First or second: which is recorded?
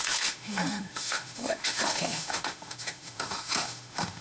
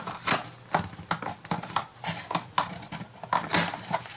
second